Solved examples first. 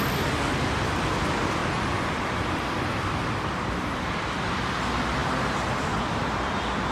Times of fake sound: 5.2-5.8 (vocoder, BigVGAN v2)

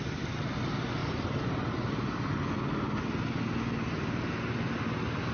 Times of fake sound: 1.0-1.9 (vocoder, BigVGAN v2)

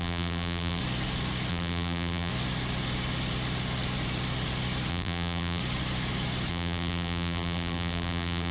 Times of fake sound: 0.0-0.8 (vocoder, BigVGAN v2); 1.5-2.3; 4.9-5.6; 6.5-8.5

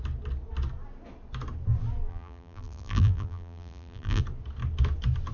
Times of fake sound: 2.1-4.2 (vocoder, BigVGAN v2)

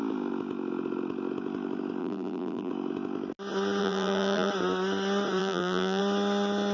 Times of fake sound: 2.0-2.7 (vocoder, BigVGAN v2); 3.8-4.5; 5.4-6.0

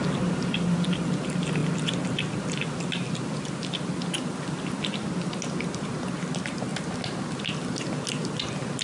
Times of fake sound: none

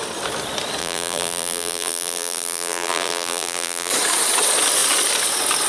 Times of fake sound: 0.8-3.9 (vocoder, BigVGAN v2)

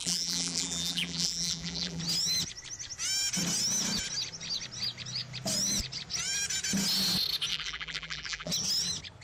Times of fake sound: 0.0-2.0 (vocoder, BigVGAN v2); 7.5-8.5